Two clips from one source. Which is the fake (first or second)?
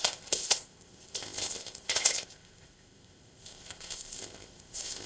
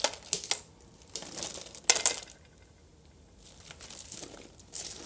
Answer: first